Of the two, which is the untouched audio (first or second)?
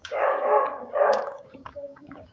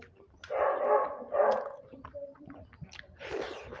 second